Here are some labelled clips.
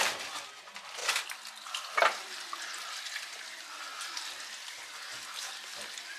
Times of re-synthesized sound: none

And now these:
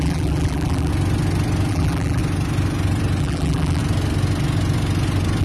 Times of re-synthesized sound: 0.0-0.9 (vocoder, BigVGAN v2); 1.7-2.2; 3.2-3.8

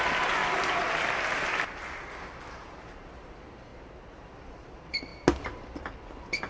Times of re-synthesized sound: 0.0-0.4 (vocoder, BigVGAN v2); 2.0-3.7; 4.2-5.1

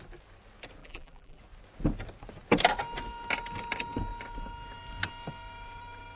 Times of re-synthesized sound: 0.8-1.4 (vocoder, BigVGAN v2)

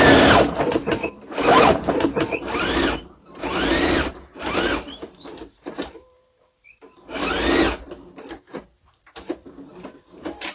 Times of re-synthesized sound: 0.0-7.2 (vocoder, BigVGAN v2); 8.3-10.5

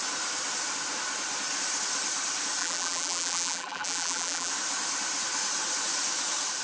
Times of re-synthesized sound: 2.6-4.5 (vocoder, BigVGAN v2)